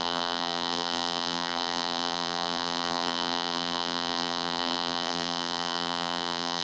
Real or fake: fake